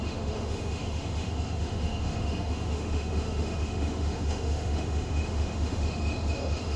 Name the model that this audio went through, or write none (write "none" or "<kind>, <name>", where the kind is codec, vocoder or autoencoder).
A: autoencoder, DAC-VAE